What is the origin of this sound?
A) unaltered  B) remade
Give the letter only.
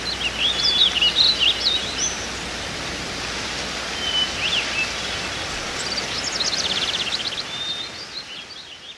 A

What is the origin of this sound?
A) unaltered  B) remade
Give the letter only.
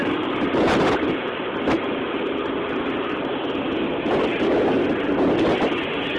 A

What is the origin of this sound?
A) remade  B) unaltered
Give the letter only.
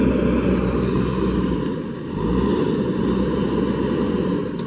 B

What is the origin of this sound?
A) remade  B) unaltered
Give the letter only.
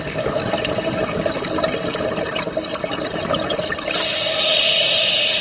B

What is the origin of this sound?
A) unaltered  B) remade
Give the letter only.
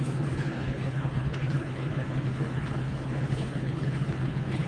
B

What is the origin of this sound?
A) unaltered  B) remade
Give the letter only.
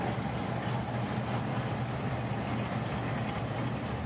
A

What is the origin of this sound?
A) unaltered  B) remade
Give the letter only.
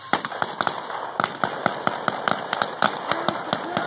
A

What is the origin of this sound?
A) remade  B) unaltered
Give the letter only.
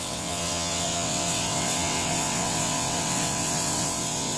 A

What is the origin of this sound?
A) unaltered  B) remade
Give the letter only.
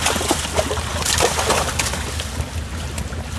A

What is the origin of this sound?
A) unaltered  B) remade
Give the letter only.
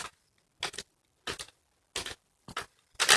A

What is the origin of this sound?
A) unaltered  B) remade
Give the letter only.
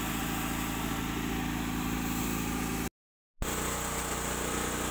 A